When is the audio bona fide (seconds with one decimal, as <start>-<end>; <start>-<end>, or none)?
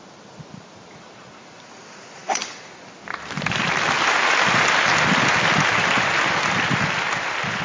0.0-2.2; 2.7-7.6